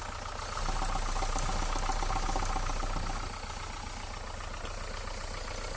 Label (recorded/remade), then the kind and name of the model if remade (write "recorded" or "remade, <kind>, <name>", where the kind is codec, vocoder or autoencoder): recorded